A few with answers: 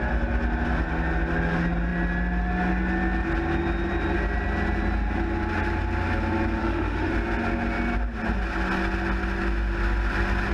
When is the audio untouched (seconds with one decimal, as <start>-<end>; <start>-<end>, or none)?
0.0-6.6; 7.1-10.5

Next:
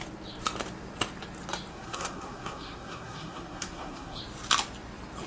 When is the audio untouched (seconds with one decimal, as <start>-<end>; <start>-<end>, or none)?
0.0-1.7; 4.2-5.3

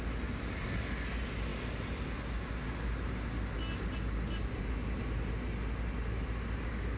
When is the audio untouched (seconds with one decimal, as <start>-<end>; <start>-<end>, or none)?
0.0-7.0

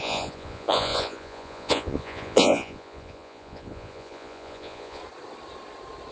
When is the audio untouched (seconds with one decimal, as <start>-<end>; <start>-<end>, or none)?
5.0-6.1

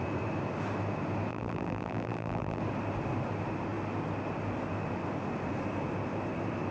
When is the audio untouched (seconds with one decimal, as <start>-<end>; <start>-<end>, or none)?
0.0-1.3; 2.6-6.7

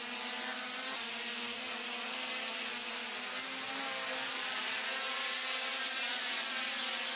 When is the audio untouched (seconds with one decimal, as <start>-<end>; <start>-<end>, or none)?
0.0-5.7; 6.4-7.2